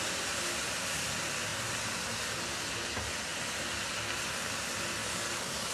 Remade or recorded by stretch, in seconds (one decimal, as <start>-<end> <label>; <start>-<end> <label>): 0.0-5.0 recorded; 5.0-5.7 remade